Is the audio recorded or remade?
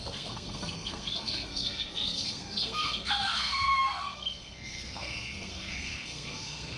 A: remade